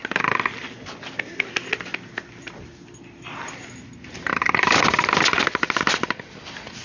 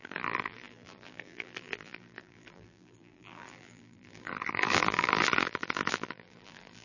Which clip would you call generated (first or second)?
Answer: second